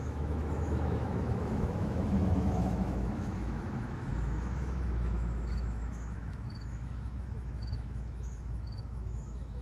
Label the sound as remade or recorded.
remade